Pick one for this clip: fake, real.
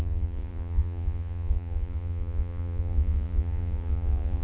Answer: fake